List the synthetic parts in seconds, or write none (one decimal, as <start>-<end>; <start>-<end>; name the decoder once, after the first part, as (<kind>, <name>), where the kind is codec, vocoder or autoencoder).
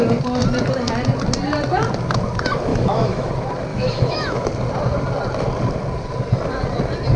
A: 2.7-3.3 (autoencoder, DAC-VAE); 3.7-4.5